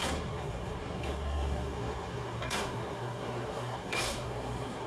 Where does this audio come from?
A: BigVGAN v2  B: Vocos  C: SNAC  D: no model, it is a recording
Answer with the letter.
C